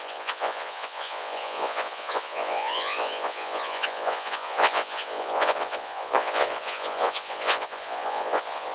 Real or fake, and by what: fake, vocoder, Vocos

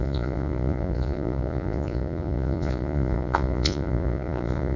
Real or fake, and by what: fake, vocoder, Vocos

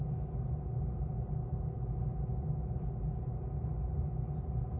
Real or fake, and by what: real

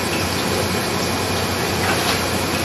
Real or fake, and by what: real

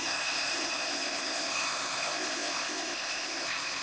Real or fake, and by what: fake, codec, ZipCodec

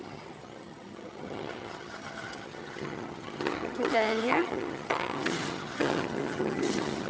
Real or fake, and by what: fake, vocoder, HiFi-GAN